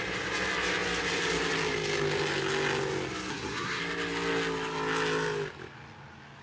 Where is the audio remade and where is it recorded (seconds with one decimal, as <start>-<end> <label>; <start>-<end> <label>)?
0.0-3.3 recorded; 3.3-3.8 remade; 3.8-6.4 recorded

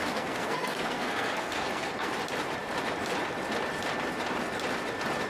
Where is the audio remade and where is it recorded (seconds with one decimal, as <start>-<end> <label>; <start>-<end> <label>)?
0.0-2.1 remade; 2.1-5.3 recorded

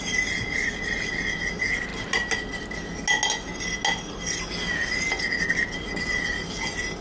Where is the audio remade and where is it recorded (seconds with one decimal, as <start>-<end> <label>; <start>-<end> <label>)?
0.0-7.0 recorded

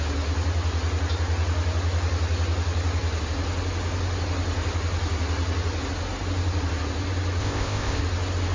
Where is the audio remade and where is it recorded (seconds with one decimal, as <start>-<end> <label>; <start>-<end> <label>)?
0.0-7.4 recorded; 7.4-8.0 remade; 8.0-8.5 recorded

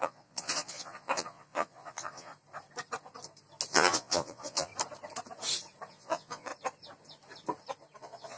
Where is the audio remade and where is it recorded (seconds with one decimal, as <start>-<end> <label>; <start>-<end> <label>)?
0.0-2.3 remade; 2.3-3.7 recorded; 3.7-4.7 remade; 4.7-5.9 recorded; 5.9-6.5 remade; 6.5-8.0 recorded; 8.0-8.4 remade

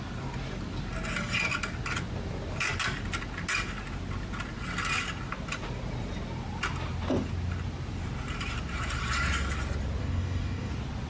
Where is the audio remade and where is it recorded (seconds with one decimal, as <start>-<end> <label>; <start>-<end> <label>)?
0.0-10.0 recorded; 10.0-10.7 remade; 10.7-11.1 recorded

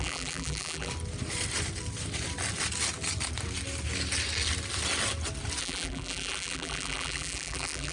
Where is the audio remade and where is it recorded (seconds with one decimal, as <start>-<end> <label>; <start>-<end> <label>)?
0.0-0.9 remade; 0.9-5.6 recorded; 5.6-7.9 remade

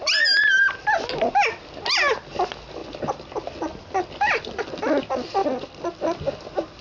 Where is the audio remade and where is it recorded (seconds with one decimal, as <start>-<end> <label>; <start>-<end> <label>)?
0.0-6.8 recorded